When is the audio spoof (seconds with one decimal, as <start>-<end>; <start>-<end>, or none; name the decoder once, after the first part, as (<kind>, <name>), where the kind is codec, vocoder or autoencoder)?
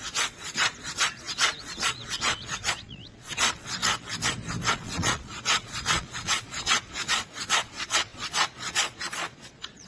0.0-3.8 (vocoder, Vocos); 4.7-9.9